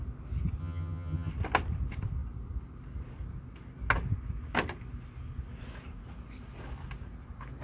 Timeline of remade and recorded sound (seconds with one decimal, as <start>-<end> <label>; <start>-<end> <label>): 0.0-0.6 recorded; 0.6-1.3 remade; 1.3-7.6 recorded